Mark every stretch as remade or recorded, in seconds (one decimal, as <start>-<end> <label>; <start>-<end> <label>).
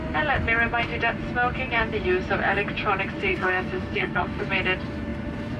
0.0-3.3 recorded; 3.3-4.4 remade; 4.4-5.6 recorded